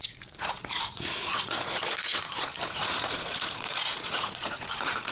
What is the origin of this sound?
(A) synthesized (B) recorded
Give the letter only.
A